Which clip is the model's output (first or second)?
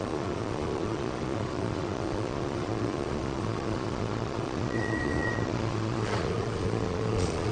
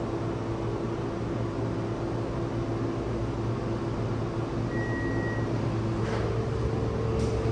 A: first